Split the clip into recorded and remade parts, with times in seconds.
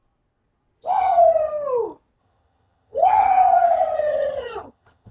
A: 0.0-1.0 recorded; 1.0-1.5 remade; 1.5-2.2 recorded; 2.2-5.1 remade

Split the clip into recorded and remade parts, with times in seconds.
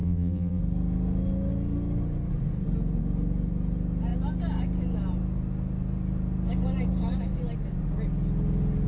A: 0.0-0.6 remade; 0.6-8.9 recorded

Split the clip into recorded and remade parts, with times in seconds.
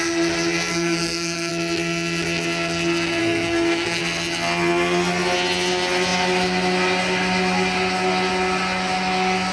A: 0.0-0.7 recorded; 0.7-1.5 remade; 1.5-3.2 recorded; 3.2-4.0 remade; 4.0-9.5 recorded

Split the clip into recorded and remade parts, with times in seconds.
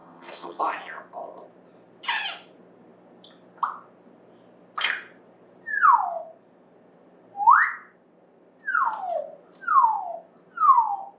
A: 0.0-0.6 remade; 0.6-11.2 recorded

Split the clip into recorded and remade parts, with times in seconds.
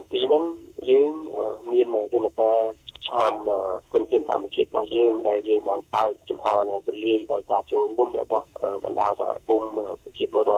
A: 0.0-10.6 remade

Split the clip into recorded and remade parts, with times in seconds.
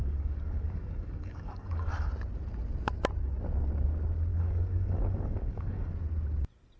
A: 0.0-2.1 remade; 2.1-4.3 recorded; 4.3-5.9 remade; 5.9-6.8 recorded